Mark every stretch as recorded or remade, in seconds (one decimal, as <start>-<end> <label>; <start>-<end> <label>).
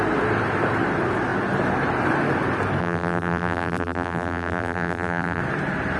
0.0-2.8 recorded; 2.8-5.4 remade; 5.4-6.0 recorded